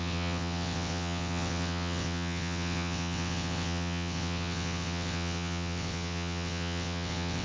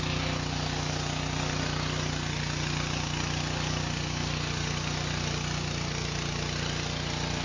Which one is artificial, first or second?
first